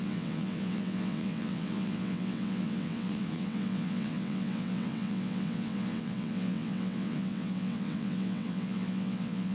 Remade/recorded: remade